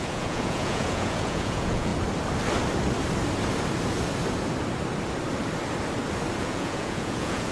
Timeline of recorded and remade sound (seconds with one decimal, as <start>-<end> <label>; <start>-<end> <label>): 0.0-1.9 remade; 1.9-6.4 recorded; 6.4-7.5 remade